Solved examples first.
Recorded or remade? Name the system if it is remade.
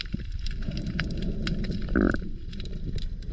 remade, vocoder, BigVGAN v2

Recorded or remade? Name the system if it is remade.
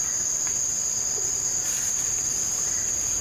recorded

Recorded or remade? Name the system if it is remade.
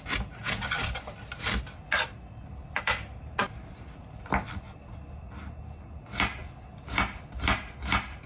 recorded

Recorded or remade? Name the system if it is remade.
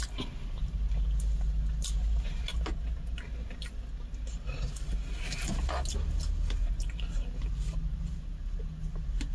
recorded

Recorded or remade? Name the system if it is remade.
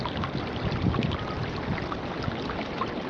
recorded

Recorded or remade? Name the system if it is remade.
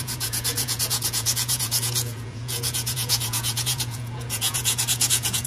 remade, vocoder, Vocos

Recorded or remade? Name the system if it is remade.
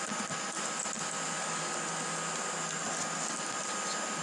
recorded